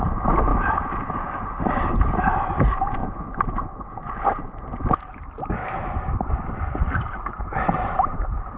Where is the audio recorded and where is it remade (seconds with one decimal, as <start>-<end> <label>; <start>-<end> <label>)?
0.0-0.5 remade; 0.5-2.0 recorded; 2.0-3.0 remade; 3.0-4.0 recorded; 4.0-5.6 remade; 5.6-7.4 recorded; 7.4-8.6 remade